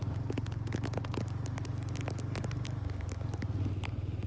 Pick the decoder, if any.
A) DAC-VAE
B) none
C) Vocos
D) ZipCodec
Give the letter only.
B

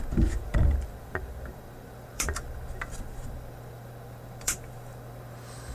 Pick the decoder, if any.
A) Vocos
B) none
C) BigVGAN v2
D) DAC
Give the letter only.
C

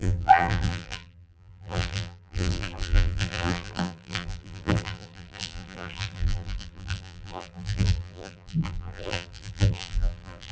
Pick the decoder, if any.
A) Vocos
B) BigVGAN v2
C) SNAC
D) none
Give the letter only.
B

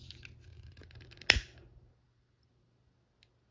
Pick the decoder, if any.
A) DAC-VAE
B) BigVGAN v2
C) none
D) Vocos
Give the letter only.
C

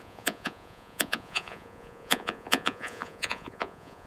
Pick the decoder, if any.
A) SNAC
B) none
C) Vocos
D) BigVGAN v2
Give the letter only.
C